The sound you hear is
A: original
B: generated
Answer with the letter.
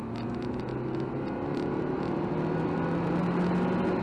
A